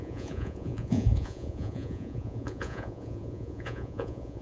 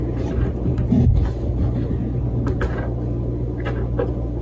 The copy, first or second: first